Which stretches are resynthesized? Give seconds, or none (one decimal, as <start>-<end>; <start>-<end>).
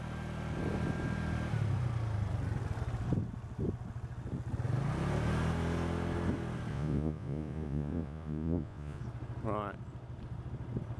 6.7-9.0